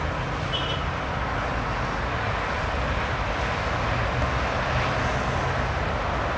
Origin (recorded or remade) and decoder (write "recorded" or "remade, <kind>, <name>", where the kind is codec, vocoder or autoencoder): recorded